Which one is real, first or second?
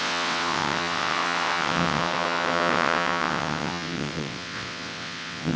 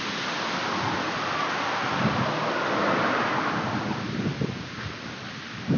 second